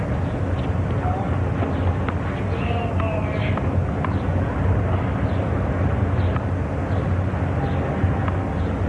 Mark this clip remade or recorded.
recorded